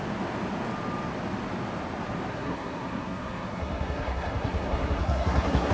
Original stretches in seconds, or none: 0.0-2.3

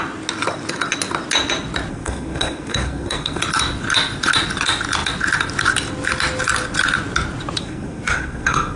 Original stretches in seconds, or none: 0.0-1.9; 3.4-7.6